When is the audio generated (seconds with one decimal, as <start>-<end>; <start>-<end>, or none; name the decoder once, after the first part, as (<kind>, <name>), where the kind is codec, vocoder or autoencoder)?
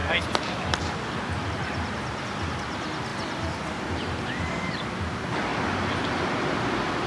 none